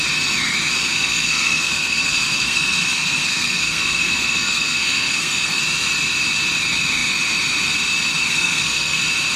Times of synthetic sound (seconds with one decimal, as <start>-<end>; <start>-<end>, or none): 0.9-5.6; 8.2-9.0